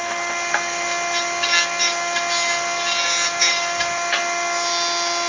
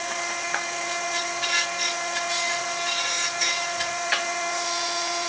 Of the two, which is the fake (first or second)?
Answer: second